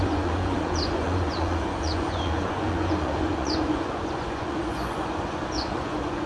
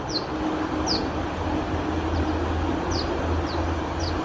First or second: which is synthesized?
first